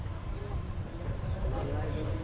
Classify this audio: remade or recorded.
recorded